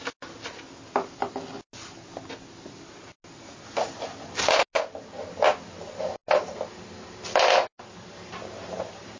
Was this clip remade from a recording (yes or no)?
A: no